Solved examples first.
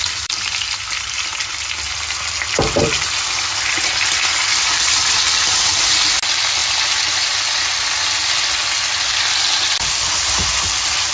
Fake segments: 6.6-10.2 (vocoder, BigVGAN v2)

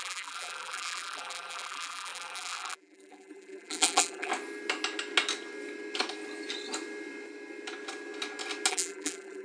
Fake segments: 0.0-4.3 (vocoder, BigVGAN v2); 8.7-9.4

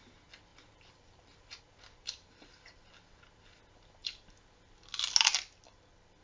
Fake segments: 0.5-1.6 (vocoder, BigVGAN v2); 2.0-2.9

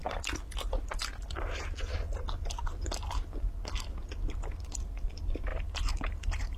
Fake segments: 5.5-6.6 (vocoder, BigVGAN v2)

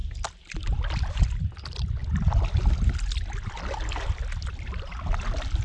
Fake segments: none

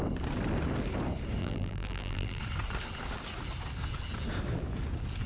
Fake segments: 1.4-2.4 (vocoder, BigVGAN v2)

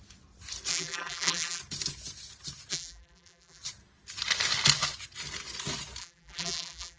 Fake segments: 0.7-1.6 (vocoder, BigVGAN v2); 2.7-3.6; 6.0-7.0

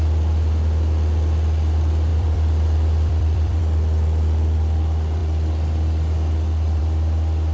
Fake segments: 2.1-3.6 (vocoder, BigVGAN v2)